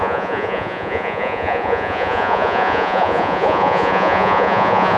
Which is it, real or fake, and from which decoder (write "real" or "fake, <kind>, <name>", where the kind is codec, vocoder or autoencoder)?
fake, vocoder, Vocos